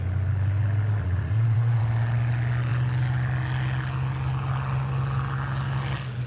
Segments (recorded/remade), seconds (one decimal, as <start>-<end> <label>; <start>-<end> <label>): 0.0-1.0 recorded; 1.0-1.8 remade; 1.8-6.3 recorded